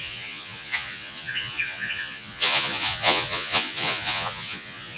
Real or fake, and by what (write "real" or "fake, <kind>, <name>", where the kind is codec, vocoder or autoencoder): fake, vocoder, Vocos